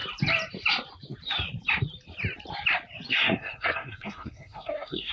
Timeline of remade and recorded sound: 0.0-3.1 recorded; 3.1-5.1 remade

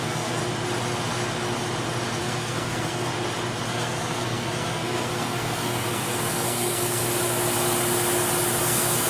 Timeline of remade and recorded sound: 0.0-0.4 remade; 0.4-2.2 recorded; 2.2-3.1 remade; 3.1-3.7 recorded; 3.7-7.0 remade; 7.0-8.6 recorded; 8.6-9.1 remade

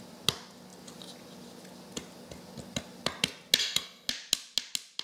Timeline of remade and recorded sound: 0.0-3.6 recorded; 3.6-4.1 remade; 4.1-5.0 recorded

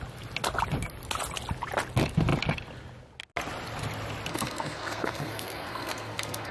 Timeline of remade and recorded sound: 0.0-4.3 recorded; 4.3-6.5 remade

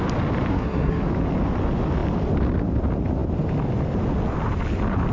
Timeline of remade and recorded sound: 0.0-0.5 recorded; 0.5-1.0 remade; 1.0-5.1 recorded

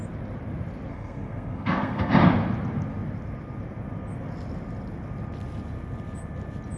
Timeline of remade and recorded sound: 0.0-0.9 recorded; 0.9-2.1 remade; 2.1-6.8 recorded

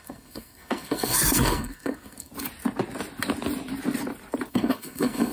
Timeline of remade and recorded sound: 0.0-2.3 remade; 2.3-4.5 recorded; 4.5-5.3 remade

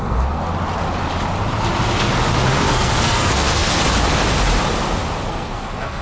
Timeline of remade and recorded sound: 0.0-0.5 remade; 0.5-2.7 recorded; 2.7-3.8 remade; 3.8-5.3 recorded; 5.3-6.0 remade